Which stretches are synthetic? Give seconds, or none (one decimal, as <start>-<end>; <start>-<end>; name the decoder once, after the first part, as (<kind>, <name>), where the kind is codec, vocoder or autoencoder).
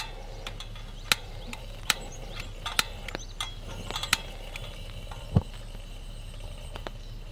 1.2-2.4 (vocoder, BigVGAN v2)